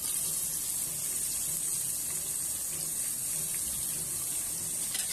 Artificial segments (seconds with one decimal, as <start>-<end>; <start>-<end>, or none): none